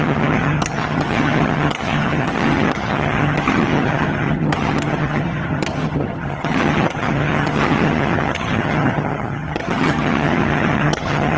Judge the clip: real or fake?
fake